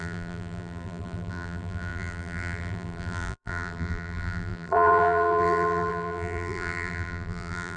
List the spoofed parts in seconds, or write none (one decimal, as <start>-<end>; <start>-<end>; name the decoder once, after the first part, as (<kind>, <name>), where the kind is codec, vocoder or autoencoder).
0.0-7.8 (vocoder, BigVGAN v2)